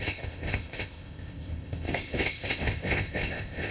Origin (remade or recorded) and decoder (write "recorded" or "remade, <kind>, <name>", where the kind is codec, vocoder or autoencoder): remade, codec, ZipCodec